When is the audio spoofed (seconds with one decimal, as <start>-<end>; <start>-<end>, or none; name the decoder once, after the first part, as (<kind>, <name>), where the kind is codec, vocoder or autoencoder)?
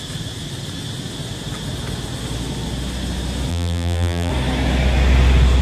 3.5-4.3 (vocoder, BigVGAN v2)